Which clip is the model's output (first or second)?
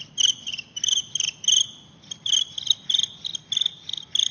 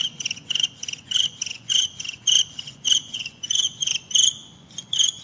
second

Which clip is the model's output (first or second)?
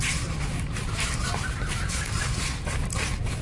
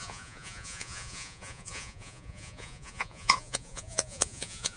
second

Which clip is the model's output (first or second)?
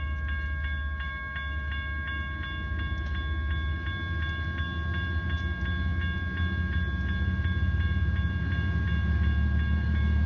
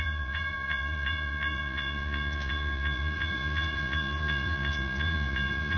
second